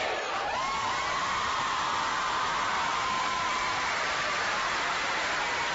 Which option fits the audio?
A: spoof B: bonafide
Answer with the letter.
A